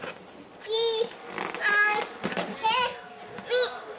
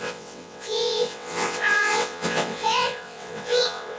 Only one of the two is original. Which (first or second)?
first